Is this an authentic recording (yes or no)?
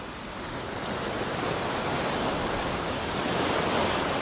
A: yes